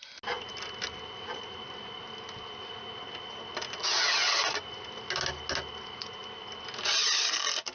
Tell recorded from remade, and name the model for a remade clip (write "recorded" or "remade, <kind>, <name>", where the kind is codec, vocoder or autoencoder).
recorded